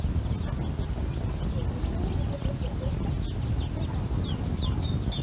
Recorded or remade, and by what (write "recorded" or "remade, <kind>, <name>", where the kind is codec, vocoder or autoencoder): recorded